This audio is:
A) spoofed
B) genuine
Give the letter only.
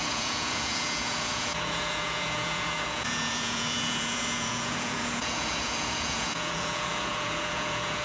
A